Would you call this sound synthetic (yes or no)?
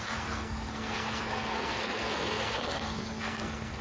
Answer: yes